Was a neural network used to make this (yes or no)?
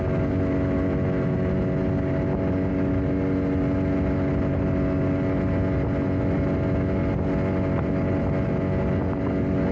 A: no